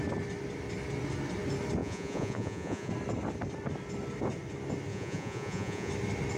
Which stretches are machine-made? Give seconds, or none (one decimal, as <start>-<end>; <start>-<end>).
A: 1.8-2.9; 4.9-5.9